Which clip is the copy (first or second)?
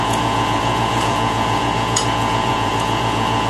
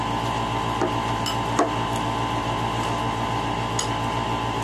first